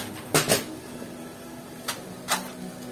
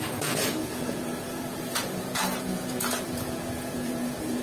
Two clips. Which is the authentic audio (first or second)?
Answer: first